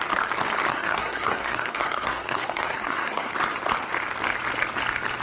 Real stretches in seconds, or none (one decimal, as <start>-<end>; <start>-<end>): 0.0-0.7; 3.3-5.2